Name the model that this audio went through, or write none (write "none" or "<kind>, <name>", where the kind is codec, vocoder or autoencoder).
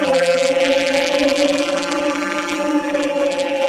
vocoder, BigVGAN v2